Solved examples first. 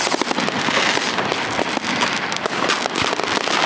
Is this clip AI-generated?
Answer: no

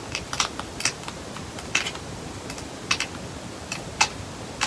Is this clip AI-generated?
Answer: no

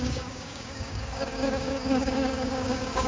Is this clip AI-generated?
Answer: yes